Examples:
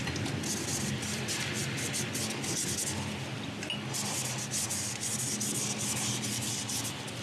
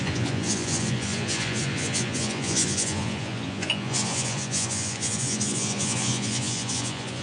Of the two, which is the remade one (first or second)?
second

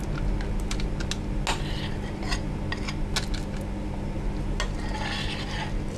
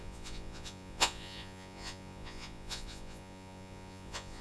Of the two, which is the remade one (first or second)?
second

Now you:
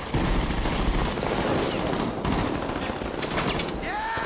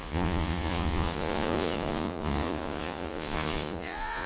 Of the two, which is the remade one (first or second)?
second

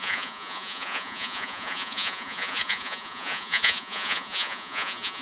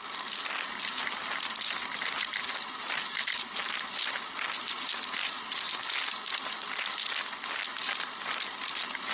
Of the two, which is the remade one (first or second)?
first